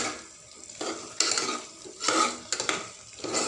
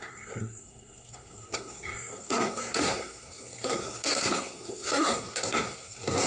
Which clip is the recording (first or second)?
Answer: first